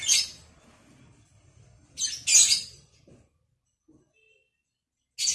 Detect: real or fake real